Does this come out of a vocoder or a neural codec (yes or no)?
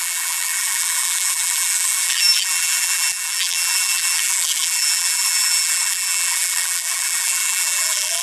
yes